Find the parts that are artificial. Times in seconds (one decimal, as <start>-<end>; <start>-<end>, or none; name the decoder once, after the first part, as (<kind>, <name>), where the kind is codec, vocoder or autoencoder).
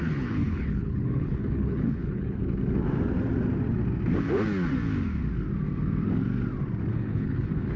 0.0-2.4 (codec, HILCodec); 6.9-7.8